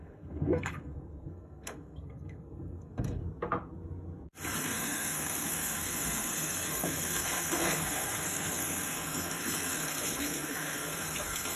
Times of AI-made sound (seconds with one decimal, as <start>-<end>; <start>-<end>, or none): 0.0-3.2; 4.6-11.6